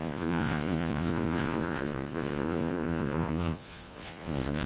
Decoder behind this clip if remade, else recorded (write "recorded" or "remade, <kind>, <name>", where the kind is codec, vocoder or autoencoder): remade, vocoder, Vocos